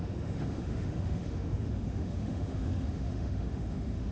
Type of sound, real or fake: fake